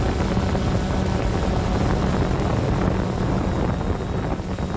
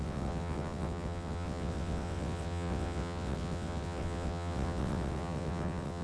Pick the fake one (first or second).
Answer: second